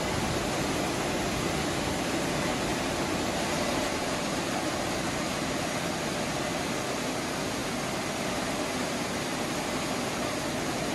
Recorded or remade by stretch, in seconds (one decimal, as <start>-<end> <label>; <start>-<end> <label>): 0.0-2.7 recorded; 2.7-5.8 remade; 5.8-10.9 recorded